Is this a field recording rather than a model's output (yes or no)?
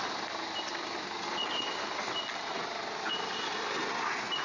yes